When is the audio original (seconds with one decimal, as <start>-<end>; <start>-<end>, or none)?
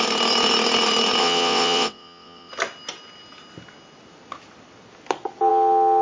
0.0-1.2; 2.5-6.0